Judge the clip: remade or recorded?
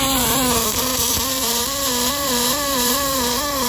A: remade